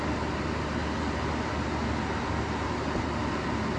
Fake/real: real